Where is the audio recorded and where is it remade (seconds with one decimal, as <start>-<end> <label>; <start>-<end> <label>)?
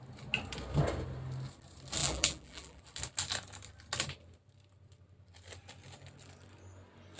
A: 0.0-2.0 recorded; 2.0-2.8 remade; 2.8-7.2 recorded